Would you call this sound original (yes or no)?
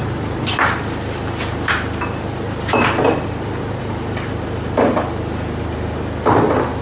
yes